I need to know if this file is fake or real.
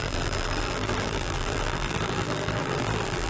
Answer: fake